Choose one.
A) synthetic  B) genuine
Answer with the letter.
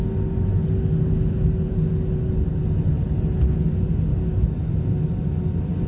B